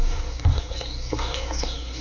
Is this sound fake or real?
fake